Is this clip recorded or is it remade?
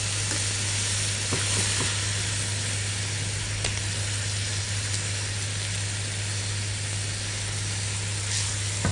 recorded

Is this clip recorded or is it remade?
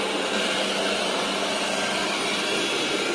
recorded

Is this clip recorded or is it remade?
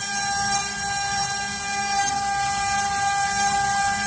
recorded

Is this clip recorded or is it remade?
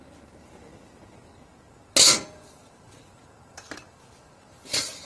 recorded